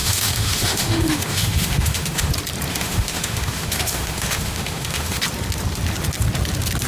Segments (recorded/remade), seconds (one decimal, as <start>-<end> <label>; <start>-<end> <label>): 0.0-2.3 remade; 2.3-2.7 recorded; 2.7-5.2 remade; 5.2-6.9 recorded